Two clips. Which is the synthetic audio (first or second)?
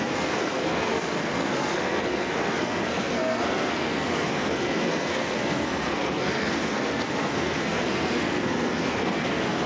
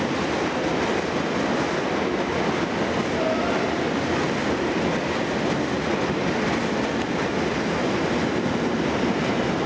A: first